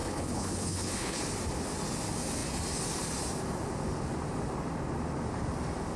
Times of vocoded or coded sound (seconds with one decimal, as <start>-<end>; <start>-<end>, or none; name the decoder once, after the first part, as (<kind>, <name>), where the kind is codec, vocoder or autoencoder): 0.0-1.2 (codec, HILCodec)